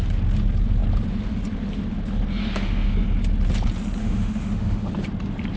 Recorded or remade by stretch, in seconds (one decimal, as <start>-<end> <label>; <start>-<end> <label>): 0.0-2.4 recorded; 2.4-2.9 remade; 2.9-4.0 recorded; 4.0-4.9 remade; 4.9-5.6 recorded